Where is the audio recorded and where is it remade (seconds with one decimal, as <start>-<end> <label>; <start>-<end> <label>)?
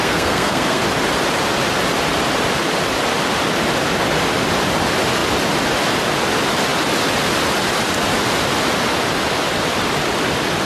0.0-0.8 remade; 0.8-10.6 recorded